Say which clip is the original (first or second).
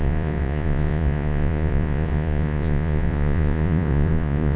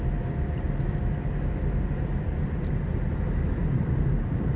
second